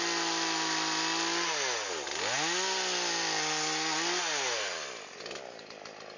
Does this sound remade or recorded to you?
recorded